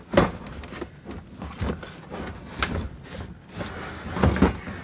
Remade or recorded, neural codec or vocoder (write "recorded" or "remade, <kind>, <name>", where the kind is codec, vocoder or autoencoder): recorded